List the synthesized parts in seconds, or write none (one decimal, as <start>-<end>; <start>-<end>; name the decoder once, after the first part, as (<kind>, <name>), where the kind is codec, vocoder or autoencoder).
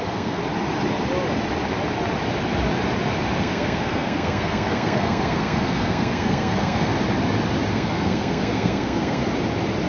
0.0-0.4 (codec, SNAC); 3.4-6.9; 7.7-9.2